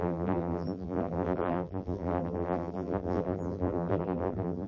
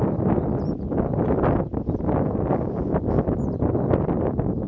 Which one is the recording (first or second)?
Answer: second